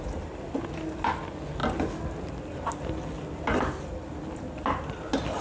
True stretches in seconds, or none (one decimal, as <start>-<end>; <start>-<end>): 0.0-5.4